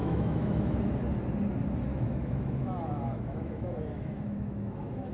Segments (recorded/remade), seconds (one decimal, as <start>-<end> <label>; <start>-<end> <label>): 0.0-0.8 remade; 0.8-1.9 recorded; 1.9-5.1 remade